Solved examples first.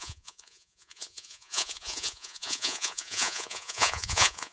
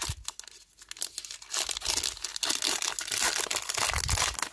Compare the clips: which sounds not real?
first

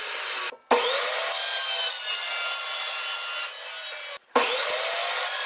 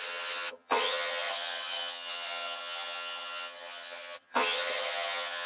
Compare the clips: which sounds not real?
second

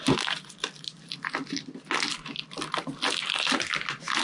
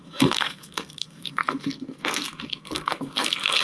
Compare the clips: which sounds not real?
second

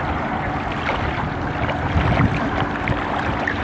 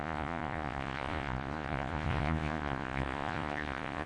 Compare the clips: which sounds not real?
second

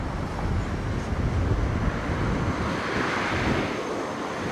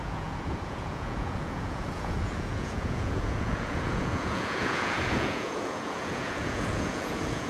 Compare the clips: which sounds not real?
second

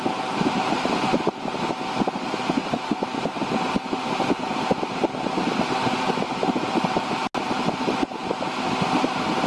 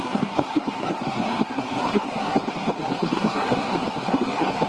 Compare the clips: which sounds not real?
second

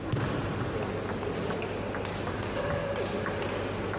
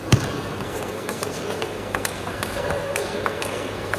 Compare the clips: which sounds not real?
second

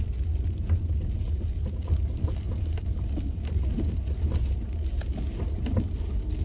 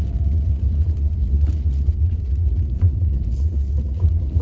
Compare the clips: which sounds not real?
second